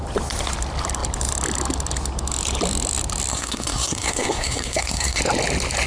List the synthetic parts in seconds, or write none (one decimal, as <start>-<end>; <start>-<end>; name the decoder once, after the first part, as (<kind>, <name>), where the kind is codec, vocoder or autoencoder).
3.3-5.2 (codec, SNAC)